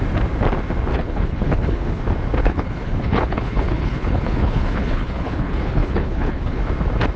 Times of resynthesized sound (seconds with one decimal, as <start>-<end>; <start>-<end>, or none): 0.9-2.0; 2.4-6.6